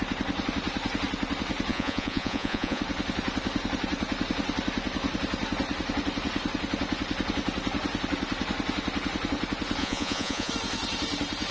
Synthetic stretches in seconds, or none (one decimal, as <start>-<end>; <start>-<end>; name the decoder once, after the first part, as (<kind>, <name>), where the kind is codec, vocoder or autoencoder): 1.7-2.8 (vocoder, Vocos); 9.8-10.5